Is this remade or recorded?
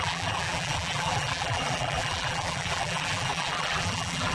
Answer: remade